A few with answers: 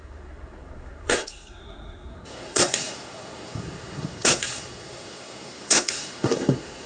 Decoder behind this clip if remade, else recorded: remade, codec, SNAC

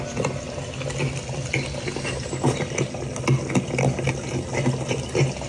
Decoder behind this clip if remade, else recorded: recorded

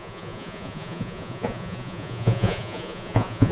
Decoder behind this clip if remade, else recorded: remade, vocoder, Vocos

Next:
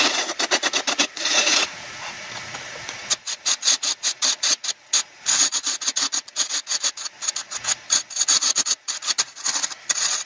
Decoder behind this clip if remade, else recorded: remade, vocoder, Vocos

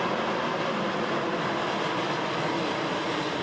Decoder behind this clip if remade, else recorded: recorded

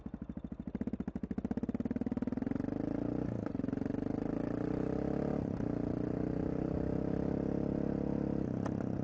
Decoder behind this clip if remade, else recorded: recorded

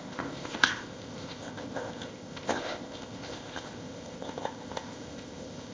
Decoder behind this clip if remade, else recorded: remade, codec, ZipCodec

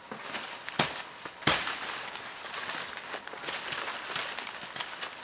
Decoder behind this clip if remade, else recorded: recorded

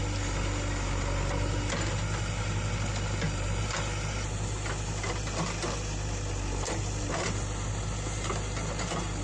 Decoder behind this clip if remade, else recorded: recorded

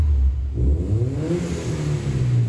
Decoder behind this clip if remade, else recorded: recorded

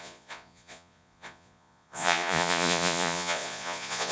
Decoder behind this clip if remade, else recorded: remade, vocoder, Vocos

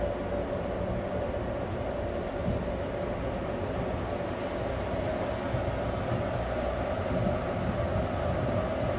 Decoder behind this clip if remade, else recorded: recorded